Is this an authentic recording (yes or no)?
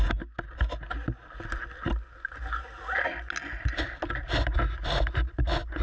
yes